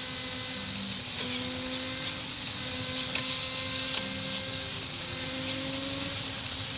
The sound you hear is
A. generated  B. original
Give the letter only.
B